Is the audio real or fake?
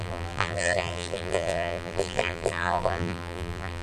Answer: fake